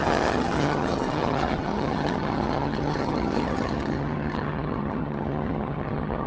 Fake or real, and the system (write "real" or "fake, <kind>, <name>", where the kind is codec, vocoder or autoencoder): fake, vocoder, HiFi-GAN